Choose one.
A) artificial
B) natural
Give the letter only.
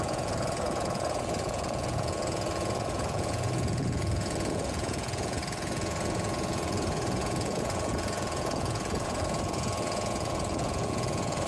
A